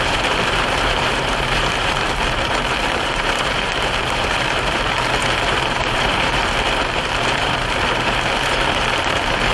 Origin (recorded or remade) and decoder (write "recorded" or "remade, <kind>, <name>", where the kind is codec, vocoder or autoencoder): remade, vocoder, BigVGAN v2